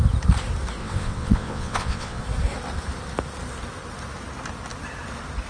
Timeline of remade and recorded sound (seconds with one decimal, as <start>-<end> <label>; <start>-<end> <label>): 0.0-0.8 recorded; 0.8-2.2 remade; 2.2-5.5 recorded